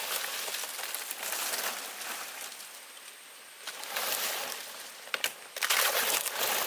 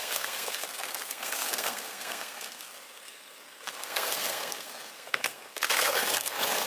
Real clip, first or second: first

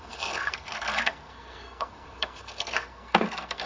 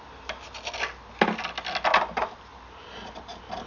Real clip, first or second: second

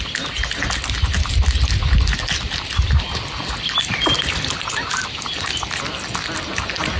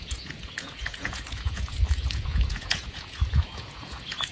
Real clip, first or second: first